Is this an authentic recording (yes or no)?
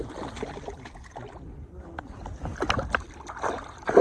yes